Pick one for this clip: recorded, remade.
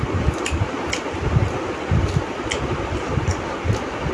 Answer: remade